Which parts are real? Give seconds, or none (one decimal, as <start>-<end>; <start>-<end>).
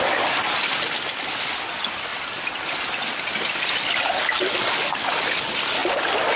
0.0-6.4